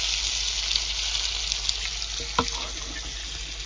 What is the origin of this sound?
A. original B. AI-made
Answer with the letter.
A